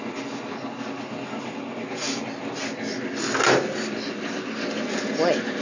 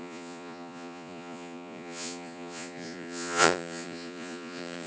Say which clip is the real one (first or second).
first